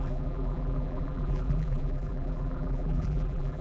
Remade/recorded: remade